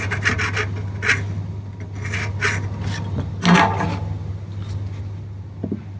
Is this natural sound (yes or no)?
yes